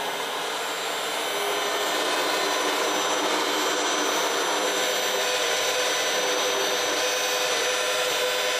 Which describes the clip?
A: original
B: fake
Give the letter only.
A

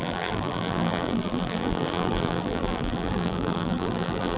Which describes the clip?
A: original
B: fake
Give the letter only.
B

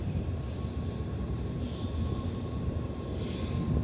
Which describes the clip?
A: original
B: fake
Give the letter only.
B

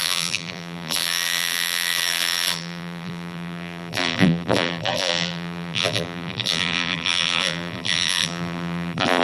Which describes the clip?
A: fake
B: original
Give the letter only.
A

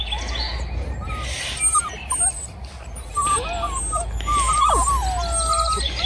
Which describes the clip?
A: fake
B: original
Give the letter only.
B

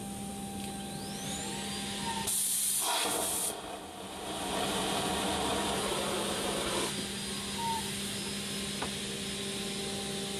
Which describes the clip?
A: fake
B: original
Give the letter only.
B